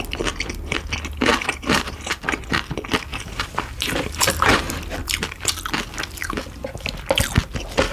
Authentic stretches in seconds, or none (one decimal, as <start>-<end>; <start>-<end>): 0.0-1.3; 2.2-3.1; 4.6-5.0; 5.5-7.9